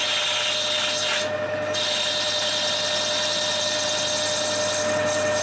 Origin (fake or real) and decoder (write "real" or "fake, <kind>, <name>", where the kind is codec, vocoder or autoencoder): real